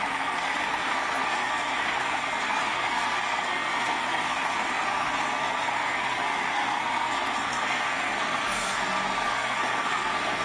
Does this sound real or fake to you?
fake